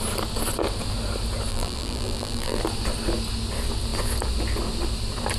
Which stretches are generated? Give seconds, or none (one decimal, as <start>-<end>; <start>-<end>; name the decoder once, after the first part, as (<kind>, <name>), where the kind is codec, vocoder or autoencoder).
1.5-2.6 (vocoder, BigVGAN v2)